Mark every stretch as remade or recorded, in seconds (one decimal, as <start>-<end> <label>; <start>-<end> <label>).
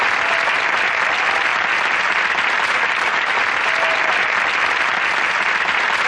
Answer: 0.0-6.1 recorded